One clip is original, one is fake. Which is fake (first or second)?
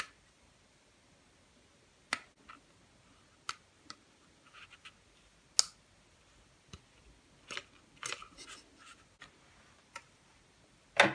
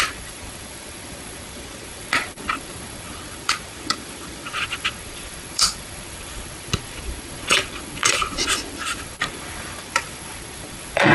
second